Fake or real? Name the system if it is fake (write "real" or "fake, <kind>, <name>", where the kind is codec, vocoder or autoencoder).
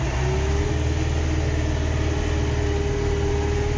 real